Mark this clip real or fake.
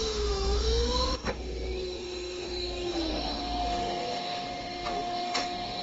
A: fake